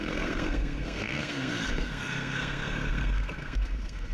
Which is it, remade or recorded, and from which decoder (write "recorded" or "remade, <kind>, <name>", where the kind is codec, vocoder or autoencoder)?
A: remade, codec, SNAC